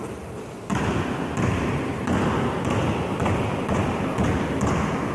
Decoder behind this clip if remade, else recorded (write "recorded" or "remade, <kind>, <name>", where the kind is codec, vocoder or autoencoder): recorded